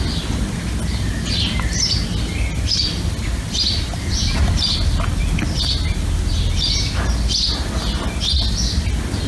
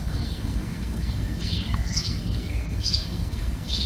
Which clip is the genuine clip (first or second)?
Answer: first